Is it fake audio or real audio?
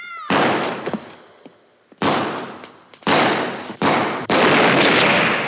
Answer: real